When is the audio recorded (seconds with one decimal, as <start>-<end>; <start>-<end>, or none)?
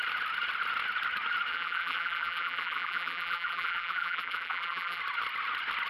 0.0-1.5; 5.0-5.9